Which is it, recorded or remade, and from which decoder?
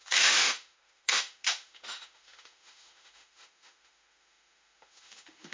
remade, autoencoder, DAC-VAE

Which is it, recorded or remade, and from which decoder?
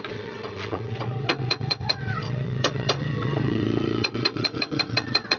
remade, vocoder, WaveNeXt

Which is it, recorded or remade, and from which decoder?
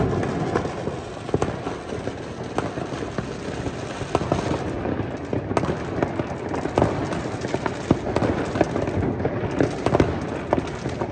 recorded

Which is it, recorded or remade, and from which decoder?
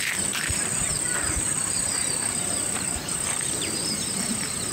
remade, vocoder, BigVGAN v2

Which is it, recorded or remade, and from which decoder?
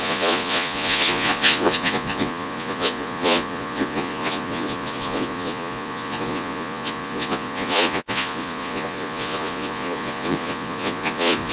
remade, vocoder, Vocos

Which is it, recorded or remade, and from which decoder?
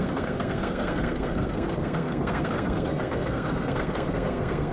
remade, codec, SNAC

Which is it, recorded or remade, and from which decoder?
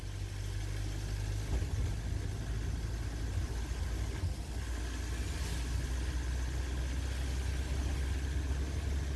recorded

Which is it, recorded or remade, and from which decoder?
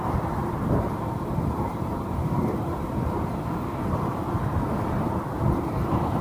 remade, vocoder, BigVGAN v2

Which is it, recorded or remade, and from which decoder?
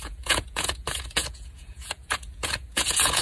remade, vocoder, Vocos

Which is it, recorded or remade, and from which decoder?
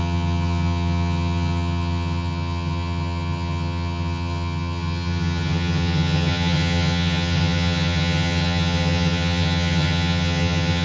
remade, vocoder, HiFi-GAN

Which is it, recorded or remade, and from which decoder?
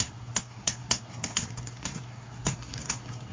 remade, codec, SNAC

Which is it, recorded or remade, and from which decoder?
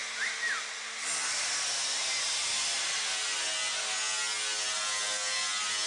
recorded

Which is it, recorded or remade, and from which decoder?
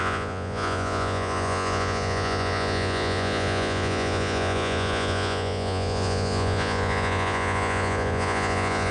remade, vocoder, Vocos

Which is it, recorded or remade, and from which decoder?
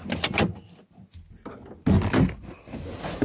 recorded